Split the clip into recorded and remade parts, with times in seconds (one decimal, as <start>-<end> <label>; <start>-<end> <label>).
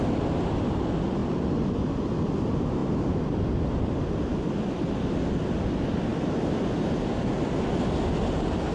0.0-8.7 recorded